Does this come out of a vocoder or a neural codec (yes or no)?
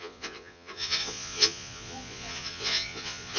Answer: yes